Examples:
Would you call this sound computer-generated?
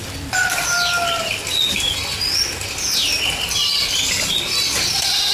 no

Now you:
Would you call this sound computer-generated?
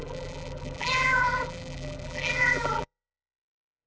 yes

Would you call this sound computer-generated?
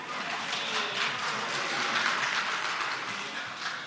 no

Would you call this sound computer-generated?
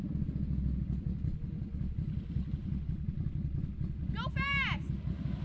no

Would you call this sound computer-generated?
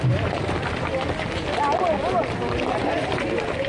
no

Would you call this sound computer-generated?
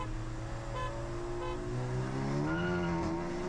no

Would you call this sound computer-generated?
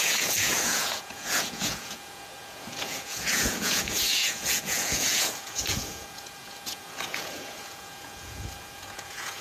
yes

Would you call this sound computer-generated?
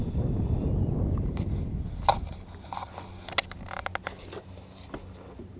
no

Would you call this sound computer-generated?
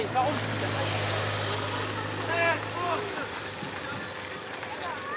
no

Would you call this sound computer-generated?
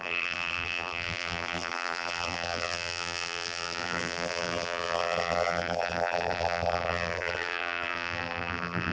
yes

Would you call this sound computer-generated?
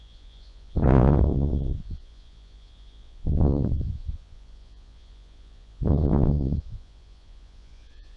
yes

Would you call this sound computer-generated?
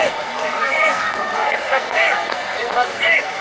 yes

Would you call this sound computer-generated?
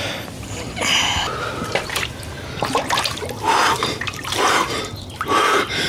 yes